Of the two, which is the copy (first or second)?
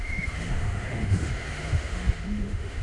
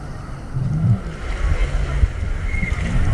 first